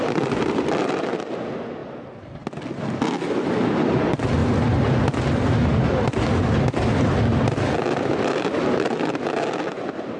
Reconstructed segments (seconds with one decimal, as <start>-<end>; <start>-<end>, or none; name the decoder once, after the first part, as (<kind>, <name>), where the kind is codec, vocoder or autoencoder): none